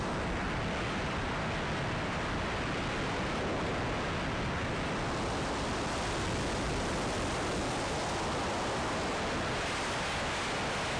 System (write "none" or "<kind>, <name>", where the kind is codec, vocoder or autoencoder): none